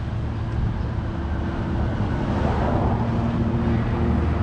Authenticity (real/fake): real